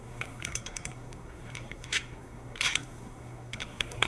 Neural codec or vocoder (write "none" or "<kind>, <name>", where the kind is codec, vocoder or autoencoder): codec, SNAC